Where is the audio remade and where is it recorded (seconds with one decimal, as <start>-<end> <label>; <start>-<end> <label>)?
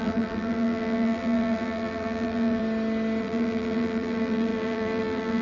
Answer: 0.0-2.6 remade; 2.6-3.2 recorded; 3.2-5.4 remade